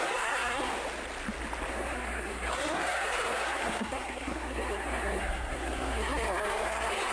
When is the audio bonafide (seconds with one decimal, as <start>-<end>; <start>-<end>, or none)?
0.7-1.7